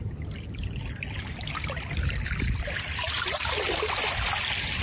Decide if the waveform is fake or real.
real